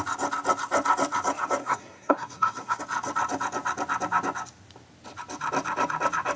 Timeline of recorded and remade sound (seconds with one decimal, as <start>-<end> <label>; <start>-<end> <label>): 0.0-1.6 recorded; 1.6-2.8 remade; 2.8-6.4 recorded